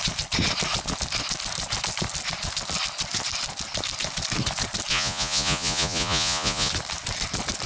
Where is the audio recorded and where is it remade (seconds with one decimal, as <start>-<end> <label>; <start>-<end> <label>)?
0.0-4.9 recorded; 4.9-6.7 remade; 6.7-7.7 recorded